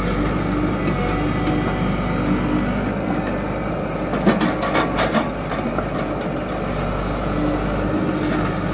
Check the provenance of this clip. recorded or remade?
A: recorded